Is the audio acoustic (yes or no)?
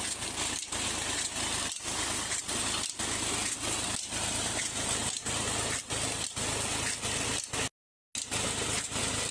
yes